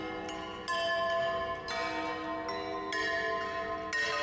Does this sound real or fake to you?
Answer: real